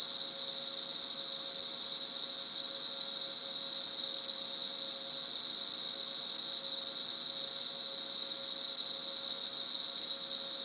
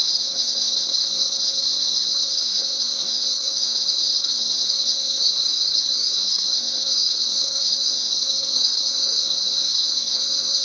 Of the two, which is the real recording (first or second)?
first